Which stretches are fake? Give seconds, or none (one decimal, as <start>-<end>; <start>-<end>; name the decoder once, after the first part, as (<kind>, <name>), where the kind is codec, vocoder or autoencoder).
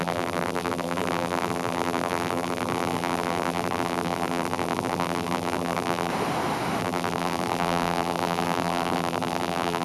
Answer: 0.0-6.1 (vocoder, BigVGAN v2); 6.8-9.8